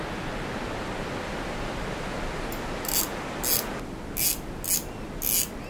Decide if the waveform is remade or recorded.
recorded